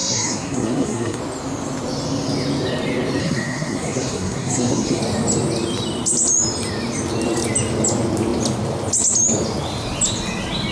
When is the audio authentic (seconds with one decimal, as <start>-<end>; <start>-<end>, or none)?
1.2-3.2; 5.0-10.7